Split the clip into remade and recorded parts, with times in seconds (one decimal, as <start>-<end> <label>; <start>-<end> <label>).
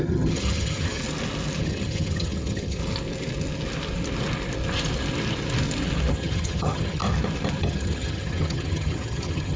0.0-1.0 remade; 1.0-1.6 recorded; 1.6-2.8 remade; 2.8-6.1 recorded; 6.1-7.0 remade; 7.0-7.6 recorded; 7.6-9.6 remade